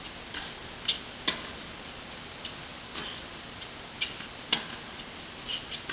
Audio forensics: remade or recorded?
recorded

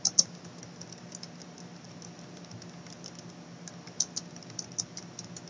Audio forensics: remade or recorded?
recorded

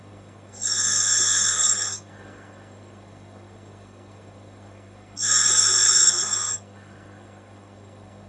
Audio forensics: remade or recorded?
remade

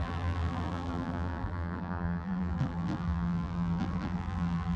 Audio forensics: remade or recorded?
remade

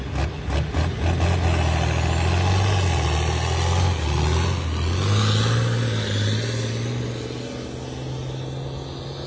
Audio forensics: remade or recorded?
recorded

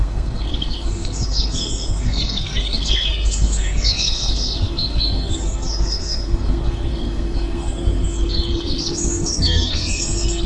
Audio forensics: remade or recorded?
remade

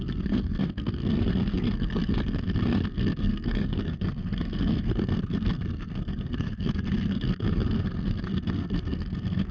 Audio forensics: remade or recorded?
remade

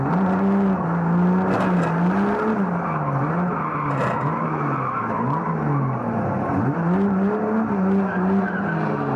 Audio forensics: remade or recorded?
recorded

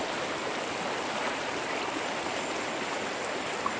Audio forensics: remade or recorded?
recorded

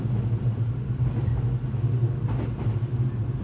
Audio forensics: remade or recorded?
recorded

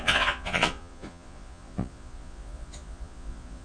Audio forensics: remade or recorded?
remade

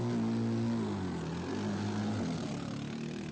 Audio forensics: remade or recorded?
recorded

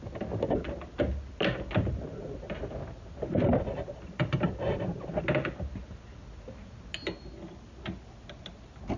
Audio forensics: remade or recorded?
recorded